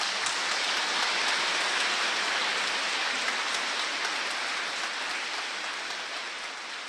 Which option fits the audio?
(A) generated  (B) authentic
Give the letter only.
B